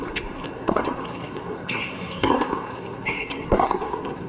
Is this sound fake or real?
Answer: fake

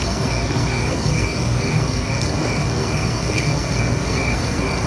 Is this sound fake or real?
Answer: fake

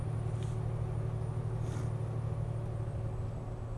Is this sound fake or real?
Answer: real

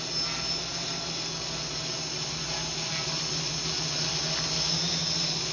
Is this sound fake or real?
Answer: real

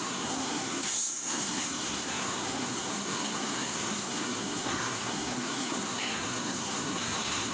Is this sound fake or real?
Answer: fake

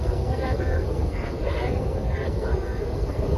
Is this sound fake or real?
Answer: fake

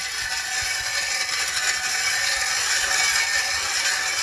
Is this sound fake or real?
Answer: real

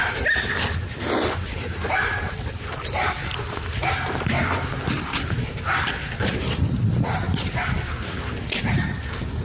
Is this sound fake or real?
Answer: real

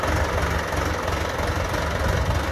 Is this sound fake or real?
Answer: real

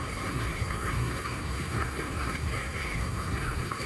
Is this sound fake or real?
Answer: fake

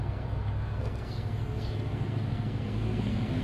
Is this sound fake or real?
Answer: fake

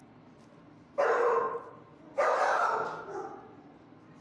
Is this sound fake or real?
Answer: real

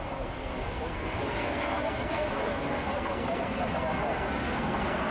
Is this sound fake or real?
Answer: fake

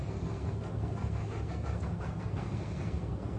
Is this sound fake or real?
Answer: fake